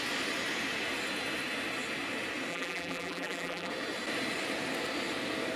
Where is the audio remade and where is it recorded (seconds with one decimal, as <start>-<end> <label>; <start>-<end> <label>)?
0.0-2.5 recorded; 2.5-3.7 remade; 3.7-5.6 recorded

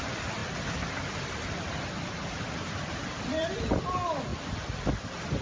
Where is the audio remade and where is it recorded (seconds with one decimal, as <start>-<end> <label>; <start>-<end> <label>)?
0.0-0.4 recorded; 0.4-3.6 remade; 3.6-4.3 recorded; 4.3-4.8 remade; 4.8-5.4 recorded